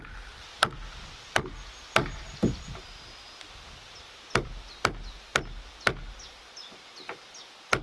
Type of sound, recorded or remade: remade